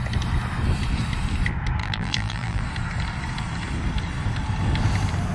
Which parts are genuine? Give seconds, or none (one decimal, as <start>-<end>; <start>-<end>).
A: 0.0-1.8; 2.6-5.3